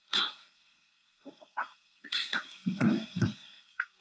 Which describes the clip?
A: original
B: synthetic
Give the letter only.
B